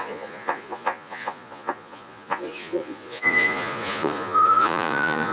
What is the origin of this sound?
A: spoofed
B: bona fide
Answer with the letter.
A